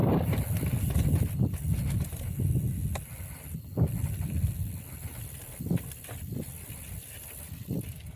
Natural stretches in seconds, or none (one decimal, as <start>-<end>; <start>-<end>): 0.0-8.2